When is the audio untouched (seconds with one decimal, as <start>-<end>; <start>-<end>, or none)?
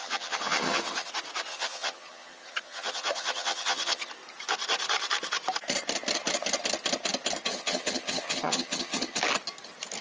1.1-1.5; 4.1-7.5; 9.2-10.0